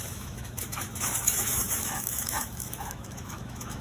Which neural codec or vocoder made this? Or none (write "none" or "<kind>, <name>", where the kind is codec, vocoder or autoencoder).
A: autoencoder, DAC-VAE